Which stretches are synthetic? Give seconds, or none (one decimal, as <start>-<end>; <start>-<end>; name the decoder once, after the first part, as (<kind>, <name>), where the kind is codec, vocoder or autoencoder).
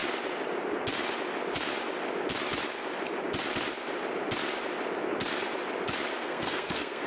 6.1-7.1 (codec, SNAC)